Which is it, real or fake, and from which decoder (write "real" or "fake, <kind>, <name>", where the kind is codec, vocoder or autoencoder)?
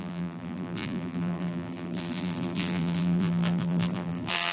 fake, vocoder, BigVGAN v2